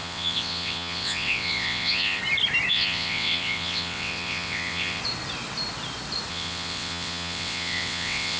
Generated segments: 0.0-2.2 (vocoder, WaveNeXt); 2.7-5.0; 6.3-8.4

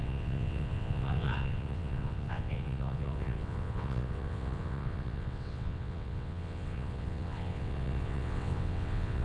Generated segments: 0.0-9.2 (vocoder, WaveNeXt)

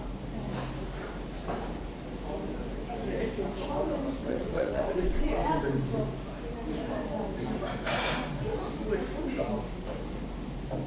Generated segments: 4.2-5.3 (vocoder, WaveNeXt)

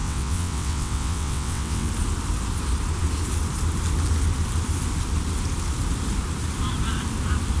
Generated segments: 0.0-1.9 (vocoder, WaveNeXt)

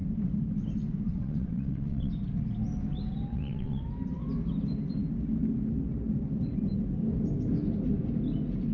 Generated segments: 1.2-2.1 (vocoder, WaveNeXt); 3.3-3.8